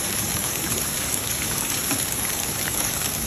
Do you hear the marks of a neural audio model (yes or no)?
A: yes